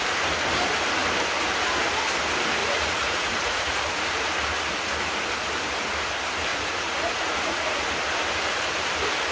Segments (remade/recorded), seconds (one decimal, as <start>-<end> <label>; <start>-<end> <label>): 0.0-2.6 recorded; 2.6-3.8 remade; 3.8-6.5 recorded; 6.5-7.9 remade; 7.9-9.3 recorded

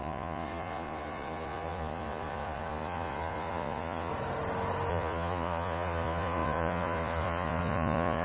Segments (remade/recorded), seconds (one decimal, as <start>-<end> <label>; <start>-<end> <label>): 0.0-4.1 remade; 4.1-4.9 recorded; 4.9-8.2 remade

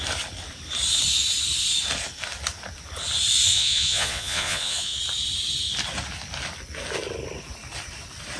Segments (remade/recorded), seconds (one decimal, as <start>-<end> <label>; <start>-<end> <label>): 0.0-3.5 recorded; 3.5-5.0 remade; 5.0-8.4 recorded

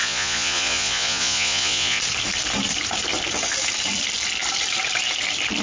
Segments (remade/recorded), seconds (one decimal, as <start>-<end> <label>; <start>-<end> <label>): 0.0-2.0 remade; 2.0-5.6 recorded

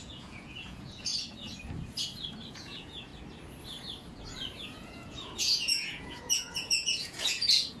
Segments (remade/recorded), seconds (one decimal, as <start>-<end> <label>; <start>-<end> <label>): 0.0-1.1 remade; 1.1-2.5 recorded; 2.5-3.1 remade; 3.1-4.6 recorded; 4.6-7.8 remade

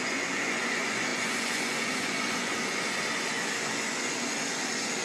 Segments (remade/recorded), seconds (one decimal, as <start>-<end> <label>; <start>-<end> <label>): 0.0-5.0 remade

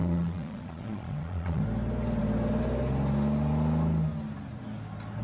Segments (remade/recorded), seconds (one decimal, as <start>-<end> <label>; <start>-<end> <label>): 0.0-1.6 remade; 1.6-5.2 recorded

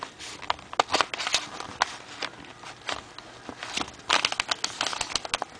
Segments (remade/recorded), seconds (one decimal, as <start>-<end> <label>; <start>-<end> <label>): 0.0-5.6 recorded